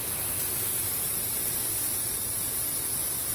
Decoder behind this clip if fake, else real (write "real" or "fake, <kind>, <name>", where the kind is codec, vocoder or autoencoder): real